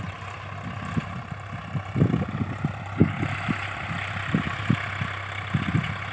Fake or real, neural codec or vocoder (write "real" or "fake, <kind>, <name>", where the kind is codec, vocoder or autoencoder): real